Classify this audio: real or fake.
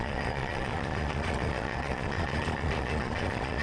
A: fake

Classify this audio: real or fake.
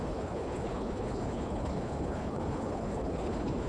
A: fake